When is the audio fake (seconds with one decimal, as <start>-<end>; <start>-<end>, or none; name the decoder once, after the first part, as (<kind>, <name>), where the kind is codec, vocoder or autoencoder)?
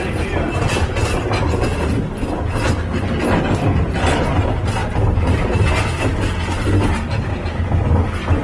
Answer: none